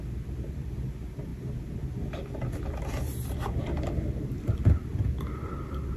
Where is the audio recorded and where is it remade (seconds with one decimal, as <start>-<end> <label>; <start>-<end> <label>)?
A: 0.0-6.0 recorded